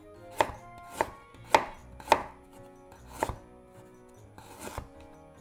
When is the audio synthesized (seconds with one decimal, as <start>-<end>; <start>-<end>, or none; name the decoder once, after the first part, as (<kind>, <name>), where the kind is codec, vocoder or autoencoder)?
none